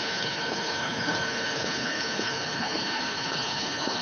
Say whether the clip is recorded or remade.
remade